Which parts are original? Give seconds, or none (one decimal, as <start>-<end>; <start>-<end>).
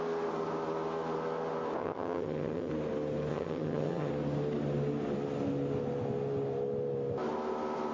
0.0-1.8; 2.7-3.3; 4.1-7.9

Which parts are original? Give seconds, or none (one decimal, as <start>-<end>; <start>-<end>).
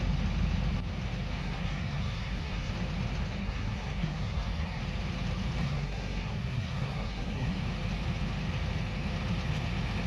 0.0-1.4; 2.7-3.4; 4.8-5.6; 7.6-10.1